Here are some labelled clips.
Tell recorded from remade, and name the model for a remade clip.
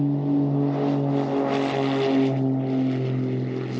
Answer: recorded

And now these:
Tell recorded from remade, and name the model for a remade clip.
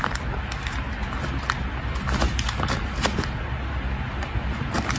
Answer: recorded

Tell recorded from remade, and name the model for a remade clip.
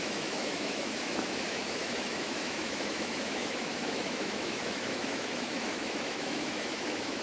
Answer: remade, autoencoder, DAC-VAE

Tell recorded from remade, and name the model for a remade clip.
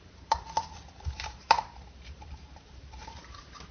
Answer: remade, vocoder, BigVGAN v2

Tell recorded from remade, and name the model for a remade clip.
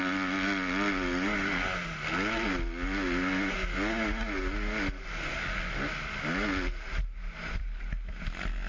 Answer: recorded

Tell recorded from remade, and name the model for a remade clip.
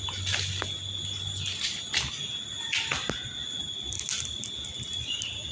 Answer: recorded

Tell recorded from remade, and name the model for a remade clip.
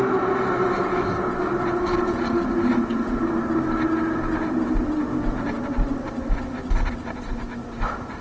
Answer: recorded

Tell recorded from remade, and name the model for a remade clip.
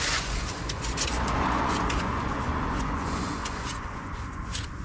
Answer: remade, vocoder, Vocos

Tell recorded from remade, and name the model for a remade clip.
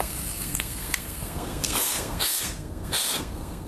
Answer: remade, codec, SNAC